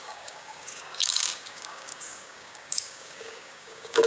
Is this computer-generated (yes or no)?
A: yes